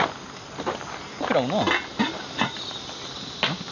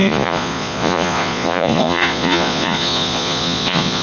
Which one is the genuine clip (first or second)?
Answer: first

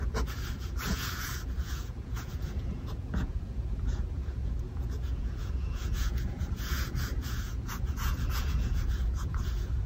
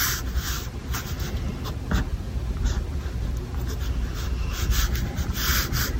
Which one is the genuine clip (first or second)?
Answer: second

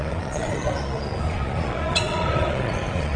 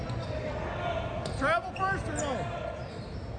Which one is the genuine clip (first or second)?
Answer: second